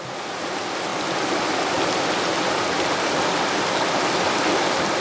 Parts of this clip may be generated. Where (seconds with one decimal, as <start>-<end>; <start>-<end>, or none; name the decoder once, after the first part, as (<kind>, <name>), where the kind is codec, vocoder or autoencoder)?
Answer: none